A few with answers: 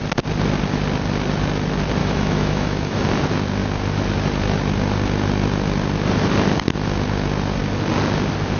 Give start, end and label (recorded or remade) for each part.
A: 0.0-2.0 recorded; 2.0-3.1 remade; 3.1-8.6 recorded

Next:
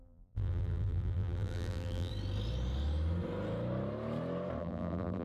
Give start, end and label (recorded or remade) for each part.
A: 0.0-2.1 remade; 2.1-4.6 recorded; 4.6-5.2 remade

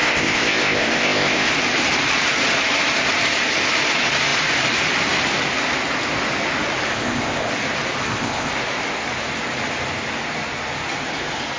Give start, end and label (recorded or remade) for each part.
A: 0.0-1.5 remade; 1.5-6.9 recorded; 6.9-7.5 remade; 7.5-8.0 recorded; 8.0-8.5 remade; 8.5-11.6 recorded

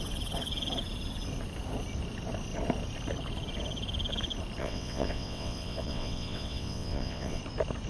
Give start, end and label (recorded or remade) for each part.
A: 0.0-4.6 recorded; 4.6-7.4 remade; 7.4-7.9 recorded

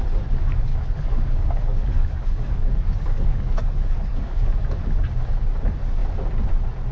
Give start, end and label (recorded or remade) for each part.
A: 0.0-0.7 recorded; 0.7-4.8 remade; 4.8-6.9 recorded

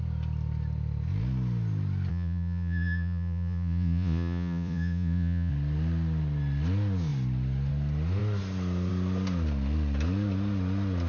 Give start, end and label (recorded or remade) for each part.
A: 0.0-2.1 recorded; 2.1-5.5 remade; 5.5-11.1 recorded

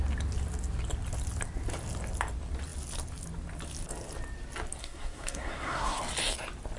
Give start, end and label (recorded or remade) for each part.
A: 0.0-4.8 recorded; 4.8-6.0 remade; 6.0-6.8 recorded

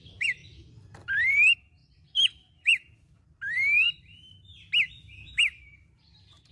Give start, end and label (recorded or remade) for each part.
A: 0.0-0.4 remade; 0.4-1.3 recorded; 1.3-4.5 remade; 4.5-5.4 recorded; 5.4-6.5 remade